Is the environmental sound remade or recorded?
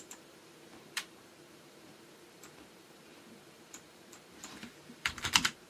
remade